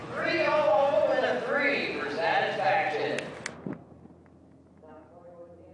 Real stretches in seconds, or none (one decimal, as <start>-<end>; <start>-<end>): 1.0-5.7